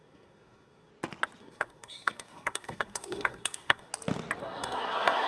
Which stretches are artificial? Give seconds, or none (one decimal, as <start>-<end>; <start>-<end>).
0.0-0.9; 1.4-3.9; 4.4-5.3